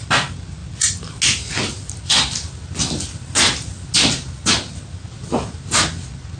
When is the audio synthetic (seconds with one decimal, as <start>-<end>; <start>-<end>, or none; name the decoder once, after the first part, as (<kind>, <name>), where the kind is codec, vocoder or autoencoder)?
none